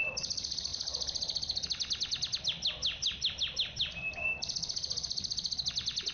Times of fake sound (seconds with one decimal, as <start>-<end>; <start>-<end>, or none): none